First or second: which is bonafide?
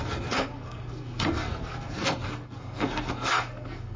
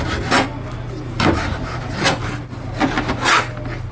second